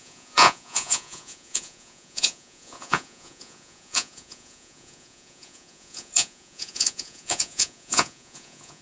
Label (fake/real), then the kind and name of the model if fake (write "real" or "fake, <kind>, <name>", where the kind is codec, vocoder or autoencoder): fake, vocoder, Vocos